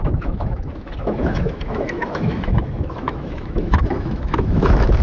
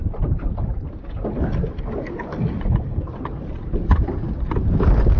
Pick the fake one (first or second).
first